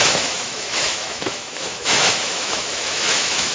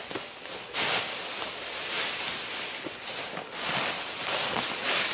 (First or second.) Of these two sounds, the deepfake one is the first